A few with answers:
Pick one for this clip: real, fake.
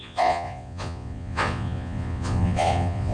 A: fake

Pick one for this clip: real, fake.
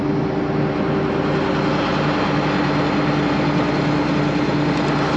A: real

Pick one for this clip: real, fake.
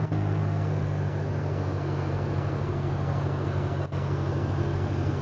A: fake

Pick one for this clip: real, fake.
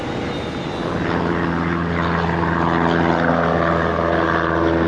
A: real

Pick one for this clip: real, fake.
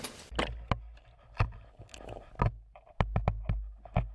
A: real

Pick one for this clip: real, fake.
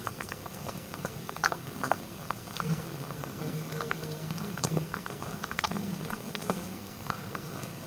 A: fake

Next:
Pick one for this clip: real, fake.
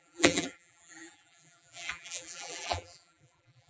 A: fake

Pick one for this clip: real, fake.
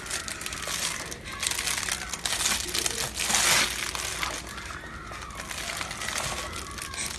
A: real